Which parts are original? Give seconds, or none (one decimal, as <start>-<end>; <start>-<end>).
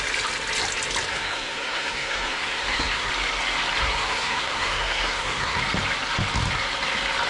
0.0-1.1; 3.1-3.8; 5.6-7.3